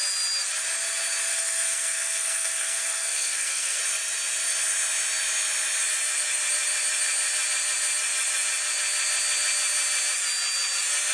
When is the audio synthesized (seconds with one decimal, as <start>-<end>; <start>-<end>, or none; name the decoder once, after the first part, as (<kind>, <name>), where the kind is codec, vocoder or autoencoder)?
1.3-3.8 (codec, SNAC)